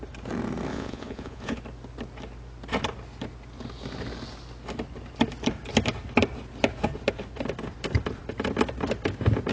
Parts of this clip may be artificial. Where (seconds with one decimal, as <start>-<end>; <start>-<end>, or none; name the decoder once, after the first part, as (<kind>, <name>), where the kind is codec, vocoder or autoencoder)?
0.7-1.6 (vocoder, Vocos)